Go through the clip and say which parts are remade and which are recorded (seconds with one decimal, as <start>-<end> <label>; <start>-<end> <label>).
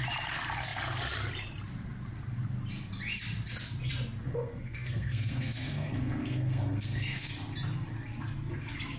0.0-4.3 recorded; 4.3-7.3 remade; 7.3-9.0 recorded